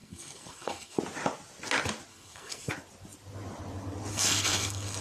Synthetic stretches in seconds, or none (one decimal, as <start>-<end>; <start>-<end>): 0.0-1.0; 2.1-2.7; 4.1-5.0